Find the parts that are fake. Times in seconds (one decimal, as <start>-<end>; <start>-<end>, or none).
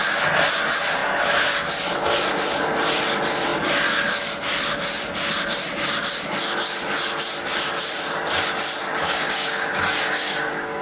9.0-10.8